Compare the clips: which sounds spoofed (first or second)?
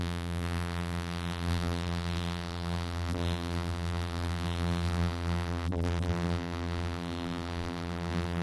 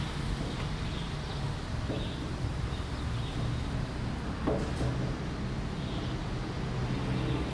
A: first